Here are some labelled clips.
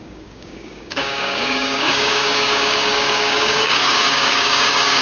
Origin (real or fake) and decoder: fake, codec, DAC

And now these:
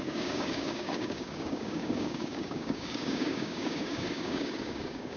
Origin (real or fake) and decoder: fake, codec, DAC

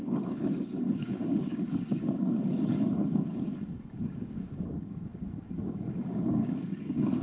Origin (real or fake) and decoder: fake, codec, DAC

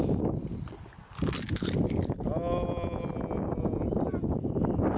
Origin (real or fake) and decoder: real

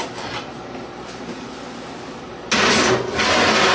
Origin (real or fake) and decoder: real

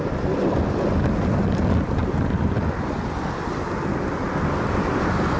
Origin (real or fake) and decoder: real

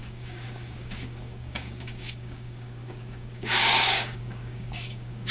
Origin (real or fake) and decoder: fake, codec, DAC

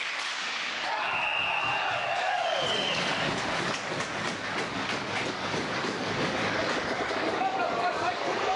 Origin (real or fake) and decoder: fake, codec, DAC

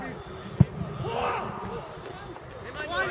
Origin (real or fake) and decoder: real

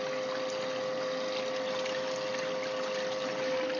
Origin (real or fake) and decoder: real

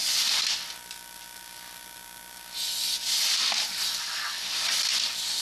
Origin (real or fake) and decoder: real